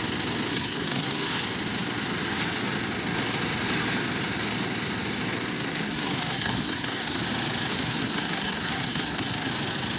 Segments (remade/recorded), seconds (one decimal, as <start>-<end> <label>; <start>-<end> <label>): 0.0-0.5 recorded; 0.5-1.3 remade; 1.3-5.5 recorded; 5.5-7.2 remade; 7.2-7.7 recorded; 7.7-9.5 remade; 9.5-10.0 recorded